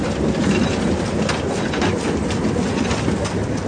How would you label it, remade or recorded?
recorded